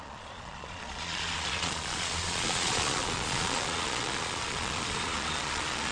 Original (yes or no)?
no